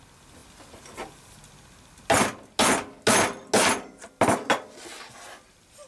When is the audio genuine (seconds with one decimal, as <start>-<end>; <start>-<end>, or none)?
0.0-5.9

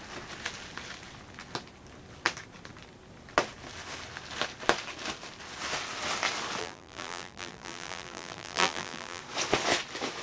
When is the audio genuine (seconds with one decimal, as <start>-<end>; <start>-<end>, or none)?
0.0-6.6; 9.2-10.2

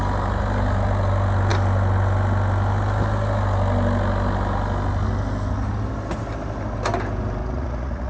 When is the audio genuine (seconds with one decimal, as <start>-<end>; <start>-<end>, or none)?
0.0-7.4